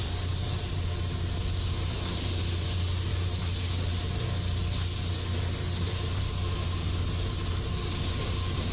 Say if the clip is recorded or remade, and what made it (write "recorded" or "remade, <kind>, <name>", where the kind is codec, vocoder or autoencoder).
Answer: recorded